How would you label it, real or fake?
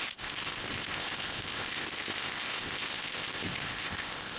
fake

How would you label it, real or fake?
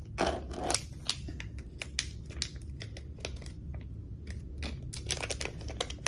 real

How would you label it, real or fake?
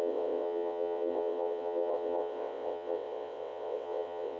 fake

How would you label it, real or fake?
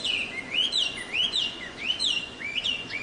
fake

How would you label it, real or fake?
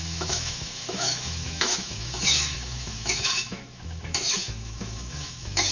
fake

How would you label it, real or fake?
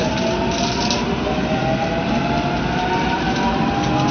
real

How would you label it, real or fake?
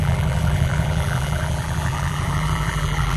fake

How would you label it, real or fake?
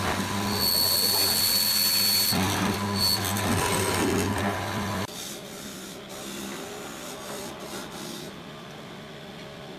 real